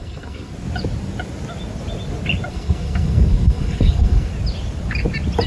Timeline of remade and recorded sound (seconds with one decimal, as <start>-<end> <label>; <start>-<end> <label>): 0.0-0.5 remade; 0.5-2.5 recorded; 2.5-4.3 remade; 4.3-5.5 recorded